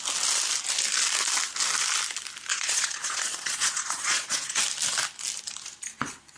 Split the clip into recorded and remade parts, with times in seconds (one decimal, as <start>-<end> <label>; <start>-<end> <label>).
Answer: 0.0-2.5 recorded; 2.5-4.6 remade; 4.6-6.4 recorded